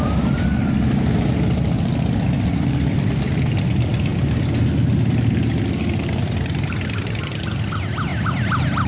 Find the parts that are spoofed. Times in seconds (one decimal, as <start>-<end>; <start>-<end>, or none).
none